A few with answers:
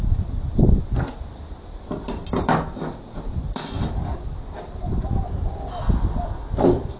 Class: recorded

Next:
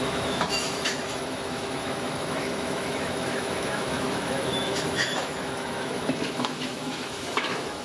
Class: remade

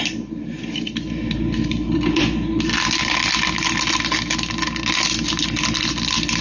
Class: recorded